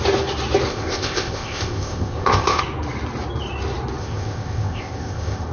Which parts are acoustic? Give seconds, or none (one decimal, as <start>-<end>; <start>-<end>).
0.0-0.7; 2.6-4.0